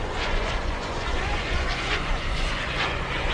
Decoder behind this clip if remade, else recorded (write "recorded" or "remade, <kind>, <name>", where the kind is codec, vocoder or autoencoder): remade, vocoder, Vocos